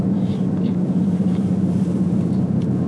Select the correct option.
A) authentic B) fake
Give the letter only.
A